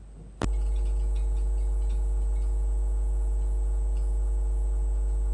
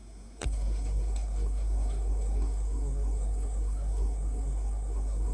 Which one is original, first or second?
first